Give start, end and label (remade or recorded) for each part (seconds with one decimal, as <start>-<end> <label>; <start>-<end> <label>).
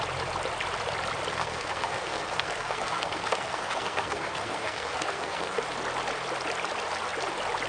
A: 0.0-1.3 recorded; 1.3-5.6 remade; 5.6-7.7 recorded